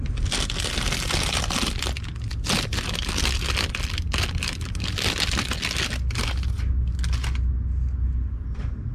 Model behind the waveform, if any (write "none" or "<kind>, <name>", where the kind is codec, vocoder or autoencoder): none